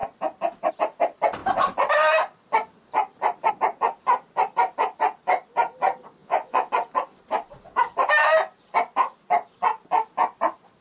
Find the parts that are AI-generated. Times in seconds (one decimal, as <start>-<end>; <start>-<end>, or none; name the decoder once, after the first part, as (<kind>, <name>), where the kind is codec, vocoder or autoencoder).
6.2-6.7 (vocoder, Vocos)